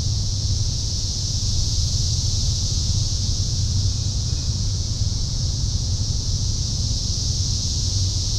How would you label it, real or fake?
fake